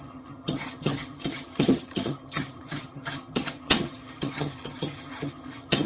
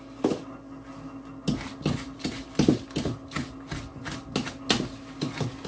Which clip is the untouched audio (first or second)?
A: second